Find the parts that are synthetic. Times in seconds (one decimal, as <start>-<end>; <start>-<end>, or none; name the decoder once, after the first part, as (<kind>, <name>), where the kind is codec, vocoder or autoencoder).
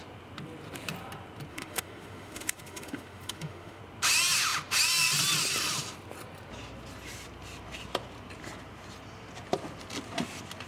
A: 1.5-3.8 (autoencoder, DAC-VAE)